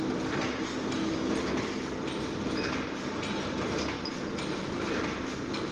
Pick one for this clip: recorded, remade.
recorded